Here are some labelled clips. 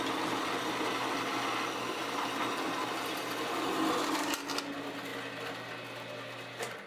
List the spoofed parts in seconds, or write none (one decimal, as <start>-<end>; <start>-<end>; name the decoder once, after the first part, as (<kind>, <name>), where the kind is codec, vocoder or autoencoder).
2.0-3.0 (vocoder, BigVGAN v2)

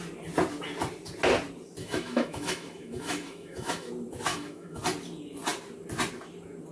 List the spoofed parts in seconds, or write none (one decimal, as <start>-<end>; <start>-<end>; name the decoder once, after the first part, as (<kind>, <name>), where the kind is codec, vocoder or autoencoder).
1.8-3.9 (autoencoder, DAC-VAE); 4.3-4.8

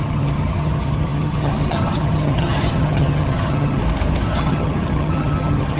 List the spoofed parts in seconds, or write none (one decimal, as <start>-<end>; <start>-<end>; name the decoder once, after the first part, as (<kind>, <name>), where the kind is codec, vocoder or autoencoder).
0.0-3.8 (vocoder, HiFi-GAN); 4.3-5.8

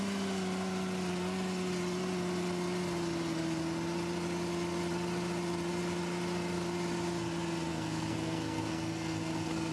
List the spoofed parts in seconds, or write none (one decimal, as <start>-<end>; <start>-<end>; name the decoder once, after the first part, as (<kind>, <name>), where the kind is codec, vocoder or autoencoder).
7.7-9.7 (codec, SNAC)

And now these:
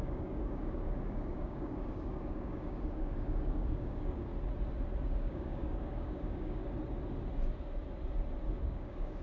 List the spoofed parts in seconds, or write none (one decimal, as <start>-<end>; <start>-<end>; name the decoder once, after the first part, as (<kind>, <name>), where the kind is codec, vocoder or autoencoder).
0.0-4.3 (codec, DAC); 5.1-6.6; 8.6-9.2

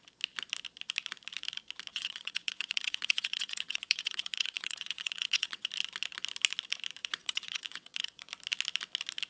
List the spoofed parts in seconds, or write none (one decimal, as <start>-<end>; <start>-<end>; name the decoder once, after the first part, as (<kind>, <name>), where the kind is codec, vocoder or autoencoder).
1.9-5.7 (vocoder, WaveNeXt); 7.0-8.3

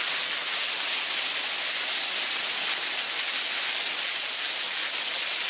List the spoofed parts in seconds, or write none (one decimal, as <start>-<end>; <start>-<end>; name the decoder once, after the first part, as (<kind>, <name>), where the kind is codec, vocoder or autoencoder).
none

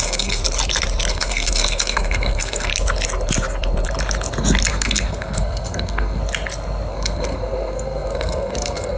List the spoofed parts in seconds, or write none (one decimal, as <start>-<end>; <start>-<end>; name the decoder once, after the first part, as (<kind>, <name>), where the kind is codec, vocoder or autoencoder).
0.0-0.4 (codec, SNAC); 1.1-2.7; 4.7-6.2; 6.9-9.0